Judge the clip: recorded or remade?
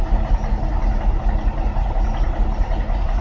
recorded